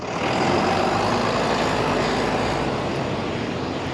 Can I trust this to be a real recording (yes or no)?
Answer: yes